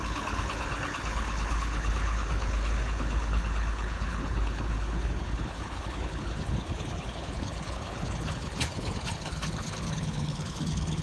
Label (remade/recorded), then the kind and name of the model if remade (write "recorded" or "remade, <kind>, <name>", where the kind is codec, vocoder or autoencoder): remade, codec, HILCodec